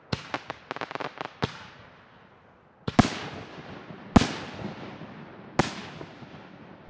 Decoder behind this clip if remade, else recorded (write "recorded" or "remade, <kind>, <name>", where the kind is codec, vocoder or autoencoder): recorded